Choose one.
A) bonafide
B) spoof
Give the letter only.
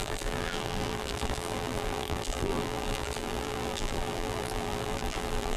B